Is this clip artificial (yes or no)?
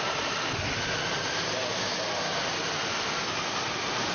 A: no